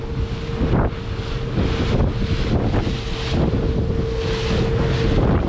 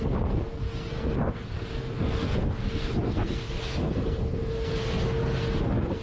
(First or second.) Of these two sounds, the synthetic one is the second